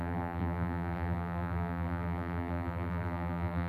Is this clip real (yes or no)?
no